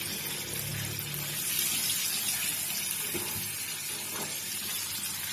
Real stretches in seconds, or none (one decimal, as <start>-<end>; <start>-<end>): 0.0-5.3